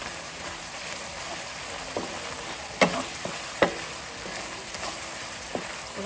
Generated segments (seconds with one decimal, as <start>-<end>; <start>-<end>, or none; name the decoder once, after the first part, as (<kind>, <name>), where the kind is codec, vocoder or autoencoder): 0.0-0.8 (vocoder, BigVGAN v2)